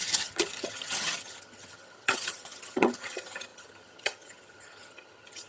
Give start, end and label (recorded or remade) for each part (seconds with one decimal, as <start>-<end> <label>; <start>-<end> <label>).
0.0-5.5 remade